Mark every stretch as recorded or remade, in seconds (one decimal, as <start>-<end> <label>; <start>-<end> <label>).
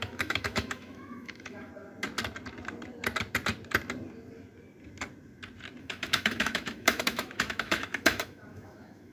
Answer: 0.0-1.7 remade; 1.7-5.8 recorded; 5.8-9.1 remade